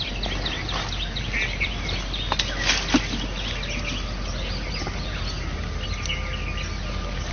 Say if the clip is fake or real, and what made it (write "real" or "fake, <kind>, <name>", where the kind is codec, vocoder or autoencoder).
real